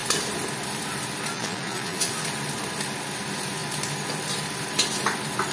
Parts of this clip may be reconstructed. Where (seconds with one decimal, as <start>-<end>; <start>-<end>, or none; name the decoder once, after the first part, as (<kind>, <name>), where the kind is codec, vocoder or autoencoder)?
1.3-2.1 (vocoder, Vocos)